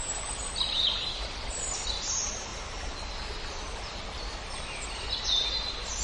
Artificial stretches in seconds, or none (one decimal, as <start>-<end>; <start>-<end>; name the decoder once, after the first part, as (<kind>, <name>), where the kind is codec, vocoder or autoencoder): 0.0-2.5 (vocoder, BigVGAN v2); 3.9-6.0